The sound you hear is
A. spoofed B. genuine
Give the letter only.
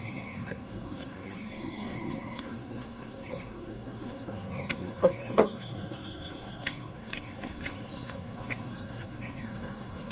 A